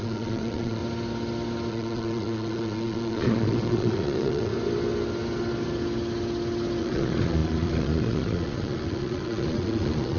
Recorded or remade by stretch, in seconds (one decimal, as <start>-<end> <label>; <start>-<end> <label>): 0.0-0.8 remade; 0.8-1.7 recorded; 1.7-4.5 remade; 4.5-6.8 recorded; 6.8-10.2 remade